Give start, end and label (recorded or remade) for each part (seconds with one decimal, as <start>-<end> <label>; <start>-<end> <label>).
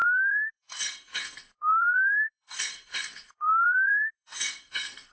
0.0-5.1 remade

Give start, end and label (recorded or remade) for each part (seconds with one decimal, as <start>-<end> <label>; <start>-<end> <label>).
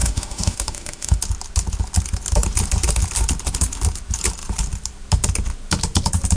0.0-1.2 remade; 1.2-6.4 recorded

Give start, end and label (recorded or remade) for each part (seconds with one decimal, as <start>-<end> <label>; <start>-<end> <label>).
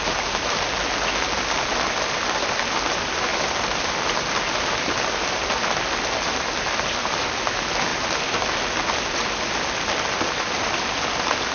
0.0-11.5 recorded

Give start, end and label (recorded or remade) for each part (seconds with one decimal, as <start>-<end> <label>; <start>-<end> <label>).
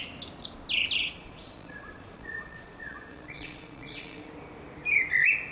0.0-1.0 recorded; 1.0-4.3 remade; 4.3-5.5 recorded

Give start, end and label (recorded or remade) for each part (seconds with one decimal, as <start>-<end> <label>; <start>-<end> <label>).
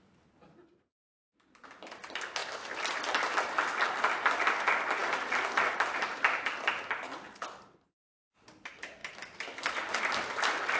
0.0-2.4 recorded; 2.4-3.5 remade; 3.5-5.0 recorded; 5.0-6.7 remade; 6.7-9.0 recorded; 9.0-10.0 remade; 10.0-10.8 recorded